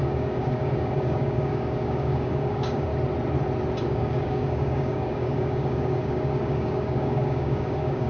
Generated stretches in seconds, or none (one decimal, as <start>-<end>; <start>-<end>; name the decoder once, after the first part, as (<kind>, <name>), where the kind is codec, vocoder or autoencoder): 0.0-2.9 (codec, DAC); 3.8-8.1